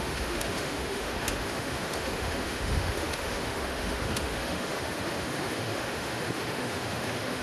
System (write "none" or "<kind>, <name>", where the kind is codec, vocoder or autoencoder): autoencoder, DAC-VAE